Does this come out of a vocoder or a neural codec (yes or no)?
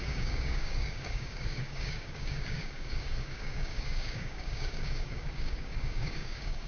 yes